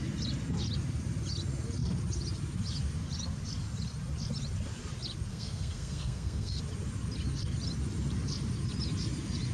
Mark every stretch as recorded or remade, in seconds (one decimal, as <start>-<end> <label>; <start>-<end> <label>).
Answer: 0.0-5.3 recorded; 5.3-6.6 remade; 6.6-9.5 recorded